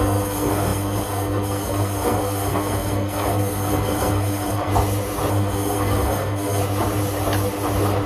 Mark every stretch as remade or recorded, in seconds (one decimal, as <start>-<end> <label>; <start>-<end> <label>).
0.0-4.7 remade; 4.7-5.3 recorded; 5.3-6.6 remade; 6.6-8.1 recorded